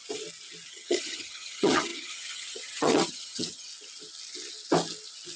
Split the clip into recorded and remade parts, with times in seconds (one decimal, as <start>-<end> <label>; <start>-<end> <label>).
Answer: 0.0-0.7 recorded; 0.7-3.7 remade; 3.7-5.4 recorded